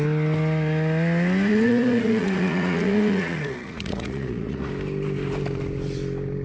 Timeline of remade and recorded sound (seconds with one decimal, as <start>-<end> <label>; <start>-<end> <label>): 0.0-1.5 recorded; 1.5-4.7 remade; 4.7-6.4 recorded